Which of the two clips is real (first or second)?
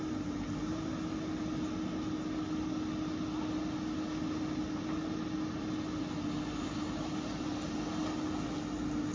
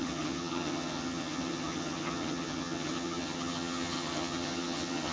first